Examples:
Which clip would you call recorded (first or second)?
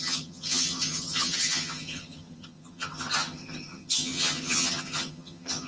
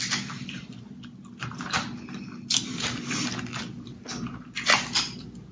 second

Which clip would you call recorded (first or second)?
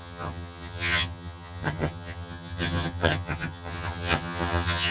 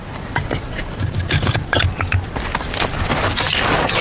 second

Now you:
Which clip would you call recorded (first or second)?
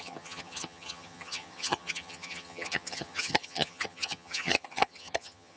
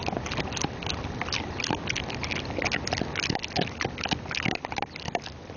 second